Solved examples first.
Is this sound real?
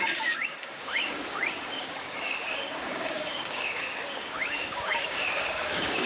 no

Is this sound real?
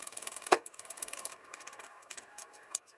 no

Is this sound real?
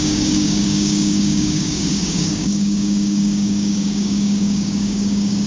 no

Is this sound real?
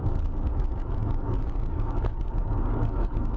no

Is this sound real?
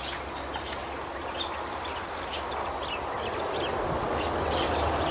yes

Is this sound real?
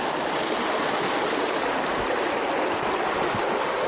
yes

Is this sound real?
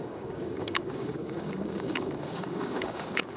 no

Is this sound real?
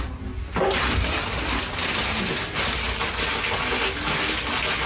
yes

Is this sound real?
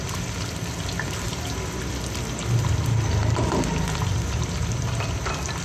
yes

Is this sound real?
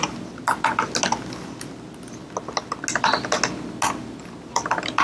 yes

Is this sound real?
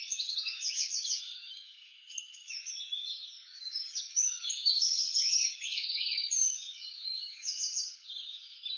no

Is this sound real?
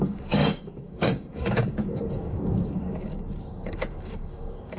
no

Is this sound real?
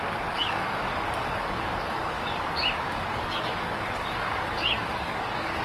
no